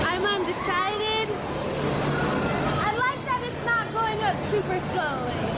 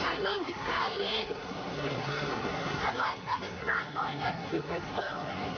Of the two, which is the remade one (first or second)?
second